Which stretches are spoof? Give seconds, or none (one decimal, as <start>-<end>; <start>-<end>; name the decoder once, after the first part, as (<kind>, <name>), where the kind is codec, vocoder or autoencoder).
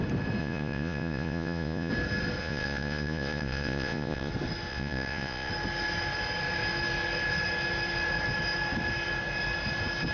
0.4-1.9 (vocoder, Vocos); 2.4-4.3; 4.7-5.5